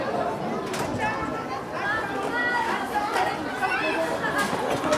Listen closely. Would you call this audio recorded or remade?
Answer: recorded